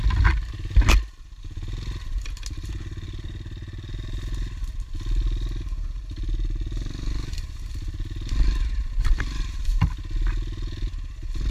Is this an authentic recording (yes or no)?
yes